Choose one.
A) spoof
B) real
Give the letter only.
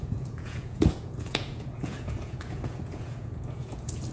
A